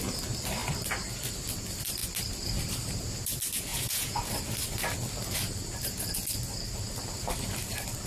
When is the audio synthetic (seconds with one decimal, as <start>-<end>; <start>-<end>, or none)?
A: 3.7-4.3